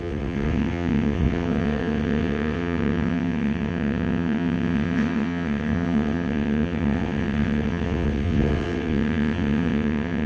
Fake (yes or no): yes